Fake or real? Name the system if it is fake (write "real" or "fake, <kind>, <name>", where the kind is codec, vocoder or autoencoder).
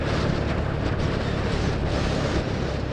real